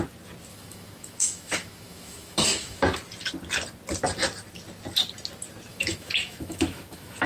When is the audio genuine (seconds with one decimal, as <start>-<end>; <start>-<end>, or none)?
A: 0.0-0.5; 2.8-5.7